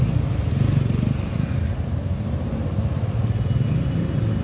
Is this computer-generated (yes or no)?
no